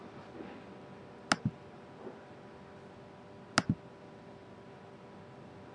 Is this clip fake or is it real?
real